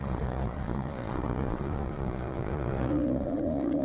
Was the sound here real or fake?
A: fake